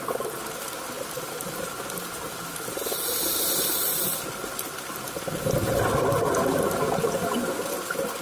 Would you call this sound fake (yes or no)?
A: no